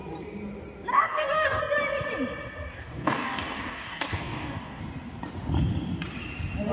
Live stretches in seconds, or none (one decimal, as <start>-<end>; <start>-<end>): 0.0-0.9; 1.6-2.7; 4.8-6.7